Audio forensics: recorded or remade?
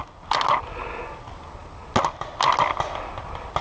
recorded